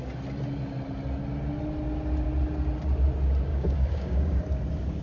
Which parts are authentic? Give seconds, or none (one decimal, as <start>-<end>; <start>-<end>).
0.0-3.5; 4.4-5.0